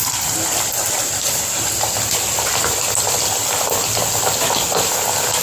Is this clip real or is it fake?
real